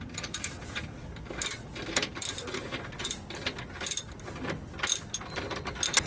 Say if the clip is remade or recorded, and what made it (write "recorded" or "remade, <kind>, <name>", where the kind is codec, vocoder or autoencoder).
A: recorded